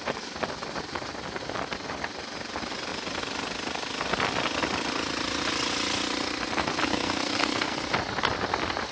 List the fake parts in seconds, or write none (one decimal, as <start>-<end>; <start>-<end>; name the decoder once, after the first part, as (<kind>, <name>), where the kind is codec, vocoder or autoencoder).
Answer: 6.8-7.8 (codec, SNAC)